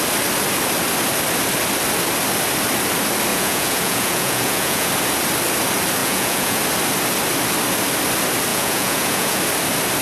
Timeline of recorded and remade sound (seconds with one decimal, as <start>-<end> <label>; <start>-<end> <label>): 0.0-3.3 recorded; 3.3-4.9 remade; 4.9-6.0 recorded; 6.0-6.6 remade; 6.6-8.5 recorded; 8.5-9.4 remade; 9.4-10.0 recorded